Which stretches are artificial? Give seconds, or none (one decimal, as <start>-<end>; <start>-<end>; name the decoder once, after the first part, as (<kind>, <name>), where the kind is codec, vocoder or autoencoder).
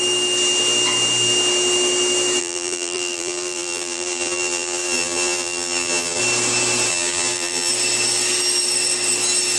2.4-6.2 (vocoder, BigVGAN v2); 6.9-7.7